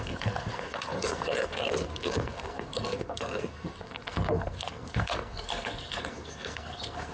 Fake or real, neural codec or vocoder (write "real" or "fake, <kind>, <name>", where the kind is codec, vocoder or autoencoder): fake, codec, SNAC